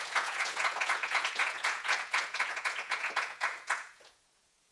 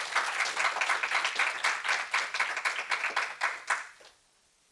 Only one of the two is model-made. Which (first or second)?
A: first